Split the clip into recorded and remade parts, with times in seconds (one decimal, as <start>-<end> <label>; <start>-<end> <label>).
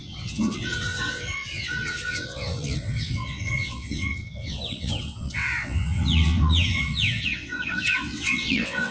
0.0-8.9 remade